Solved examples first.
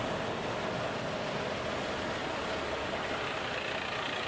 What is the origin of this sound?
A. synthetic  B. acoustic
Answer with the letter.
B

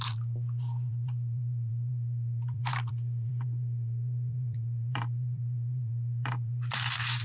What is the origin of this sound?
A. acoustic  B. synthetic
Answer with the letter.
B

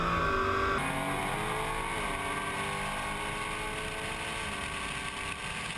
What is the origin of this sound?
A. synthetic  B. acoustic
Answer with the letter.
B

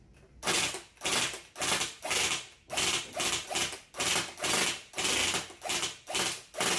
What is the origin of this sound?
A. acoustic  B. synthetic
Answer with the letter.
A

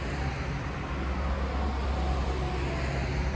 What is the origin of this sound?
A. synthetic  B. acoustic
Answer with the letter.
B